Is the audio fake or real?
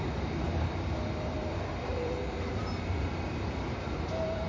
fake